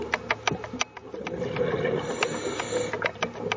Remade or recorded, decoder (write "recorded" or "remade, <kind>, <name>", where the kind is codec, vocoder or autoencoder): recorded